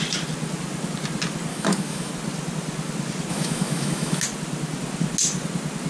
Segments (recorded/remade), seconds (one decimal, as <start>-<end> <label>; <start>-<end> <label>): 0.0-1.5 recorded; 1.5-2.1 remade; 2.1-3.3 recorded; 3.3-4.2 remade; 4.2-5.9 recorded